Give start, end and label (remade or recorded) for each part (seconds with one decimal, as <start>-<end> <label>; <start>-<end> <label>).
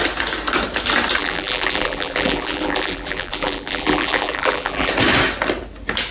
0.0-1.2 recorded; 1.2-4.9 remade; 4.9-6.1 recorded